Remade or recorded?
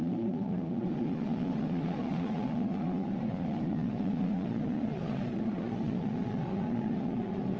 remade